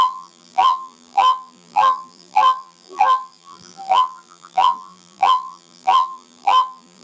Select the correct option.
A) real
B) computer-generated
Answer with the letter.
B